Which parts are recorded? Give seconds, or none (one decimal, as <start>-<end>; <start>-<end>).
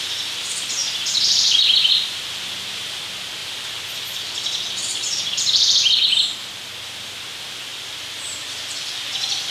0.0-0.8; 3.0-3.4; 6.0-7.7